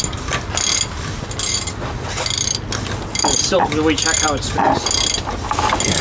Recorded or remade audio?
recorded